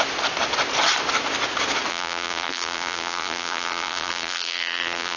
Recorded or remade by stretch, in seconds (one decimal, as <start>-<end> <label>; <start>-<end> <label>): 0.0-1.9 recorded; 1.9-5.2 remade